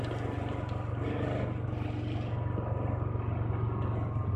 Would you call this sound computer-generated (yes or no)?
no